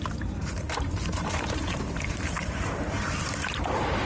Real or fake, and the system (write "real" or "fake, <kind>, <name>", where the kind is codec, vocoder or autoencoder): fake, vocoder, BigVGAN v2